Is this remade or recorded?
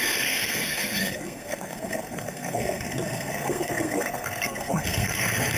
remade